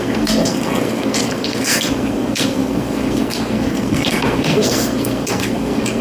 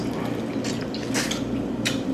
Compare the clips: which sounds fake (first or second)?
first